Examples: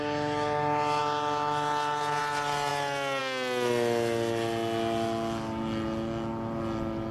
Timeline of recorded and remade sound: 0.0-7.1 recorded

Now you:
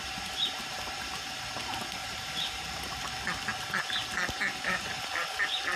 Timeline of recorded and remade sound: 0.0-2.0 recorded; 2.0-3.0 remade; 3.0-5.8 recorded

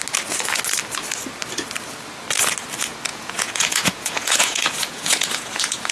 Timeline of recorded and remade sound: 0.0-3.1 recorded; 3.1-5.9 remade

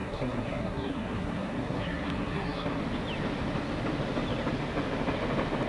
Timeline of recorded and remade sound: 0.0-2.8 remade; 2.8-5.7 recorded